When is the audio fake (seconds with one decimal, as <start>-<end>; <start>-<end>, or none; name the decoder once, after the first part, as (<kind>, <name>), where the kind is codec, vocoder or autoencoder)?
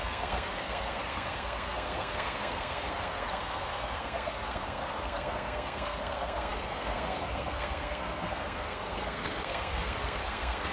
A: 0.0-10.7 (codec, SNAC)